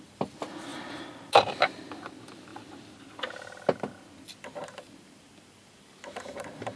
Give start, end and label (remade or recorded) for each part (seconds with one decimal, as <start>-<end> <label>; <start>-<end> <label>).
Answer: 0.0-6.8 recorded